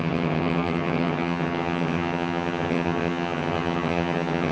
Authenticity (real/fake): fake